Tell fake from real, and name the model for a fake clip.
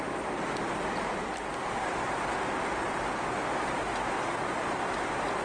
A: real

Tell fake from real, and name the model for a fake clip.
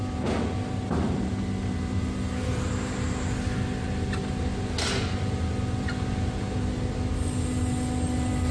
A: real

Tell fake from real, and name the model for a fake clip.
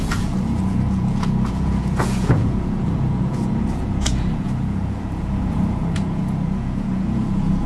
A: fake, vocoder, Vocos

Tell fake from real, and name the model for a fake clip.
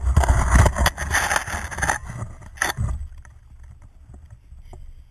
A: real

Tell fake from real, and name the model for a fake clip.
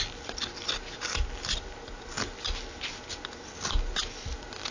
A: real